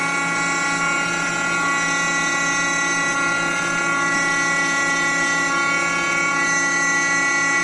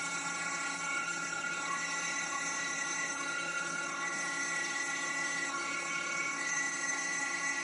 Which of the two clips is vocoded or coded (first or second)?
second